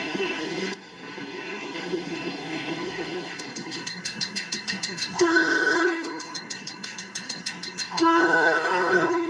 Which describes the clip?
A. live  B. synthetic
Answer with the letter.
B